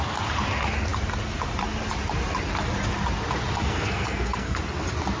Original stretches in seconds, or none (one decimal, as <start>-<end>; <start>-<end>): 0.0-3.6; 4.6-5.2